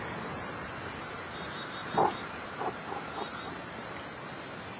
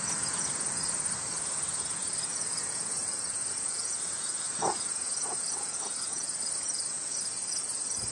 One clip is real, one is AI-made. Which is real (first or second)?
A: first